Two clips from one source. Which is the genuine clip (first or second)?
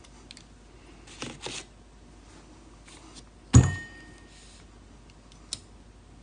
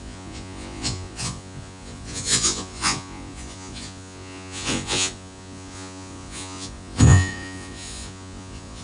first